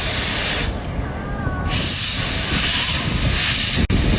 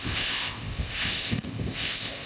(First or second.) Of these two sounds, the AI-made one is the second